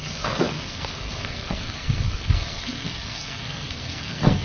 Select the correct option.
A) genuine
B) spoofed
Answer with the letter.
B